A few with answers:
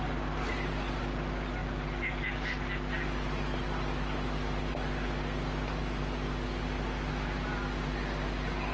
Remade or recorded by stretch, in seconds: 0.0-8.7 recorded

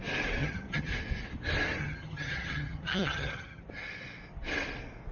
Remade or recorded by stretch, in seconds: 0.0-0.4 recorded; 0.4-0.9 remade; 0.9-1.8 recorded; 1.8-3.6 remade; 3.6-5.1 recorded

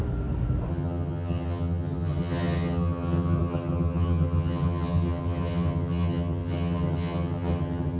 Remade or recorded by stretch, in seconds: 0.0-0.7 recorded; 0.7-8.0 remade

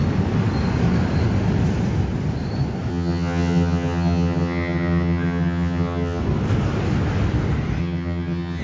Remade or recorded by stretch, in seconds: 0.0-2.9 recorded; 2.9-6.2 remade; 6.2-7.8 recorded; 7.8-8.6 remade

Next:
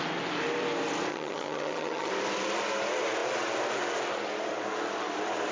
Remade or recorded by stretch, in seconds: 0.0-1.1 recorded; 1.1-2.1 remade; 2.1-5.5 recorded